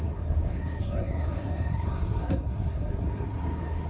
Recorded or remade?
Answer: remade